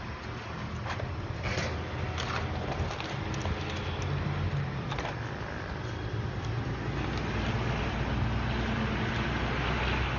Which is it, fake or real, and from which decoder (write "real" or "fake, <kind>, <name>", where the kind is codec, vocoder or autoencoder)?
real